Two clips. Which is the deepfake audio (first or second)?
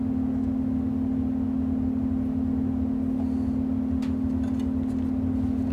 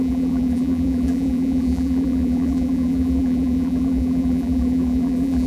second